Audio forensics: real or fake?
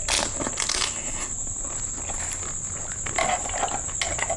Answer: real